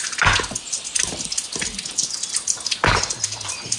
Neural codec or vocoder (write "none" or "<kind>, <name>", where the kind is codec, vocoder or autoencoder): none